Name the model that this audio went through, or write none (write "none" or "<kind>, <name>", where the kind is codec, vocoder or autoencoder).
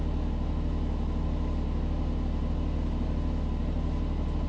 none